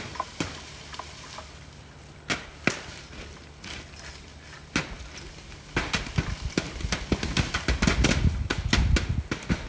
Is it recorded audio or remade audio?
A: recorded